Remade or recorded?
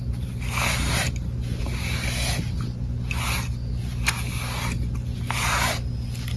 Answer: recorded